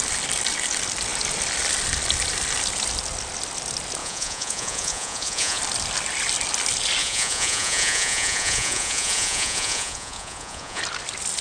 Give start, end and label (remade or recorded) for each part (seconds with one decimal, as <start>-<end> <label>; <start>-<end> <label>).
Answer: 0.0-4.0 recorded; 4.0-5.6 remade; 5.6-7.0 recorded; 7.0-10.8 remade; 10.8-11.4 recorded